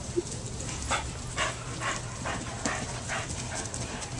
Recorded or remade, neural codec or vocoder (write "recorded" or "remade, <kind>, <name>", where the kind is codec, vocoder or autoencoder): recorded